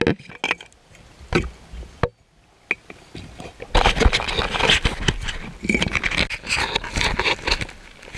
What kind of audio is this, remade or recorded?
recorded